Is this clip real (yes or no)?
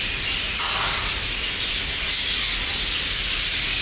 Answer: yes